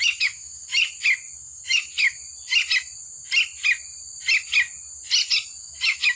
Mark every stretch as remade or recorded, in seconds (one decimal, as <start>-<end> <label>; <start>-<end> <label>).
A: 0.0-0.8 remade; 0.8-1.4 recorded; 1.4-2.2 remade; 2.2-5.6 recorded; 5.6-6.2 remade